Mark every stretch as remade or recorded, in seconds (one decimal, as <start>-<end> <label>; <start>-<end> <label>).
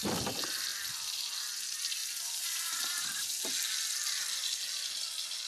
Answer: 0.0-2.0 recorded; 2.0-3.3 remade; 3.3-5.5 recorded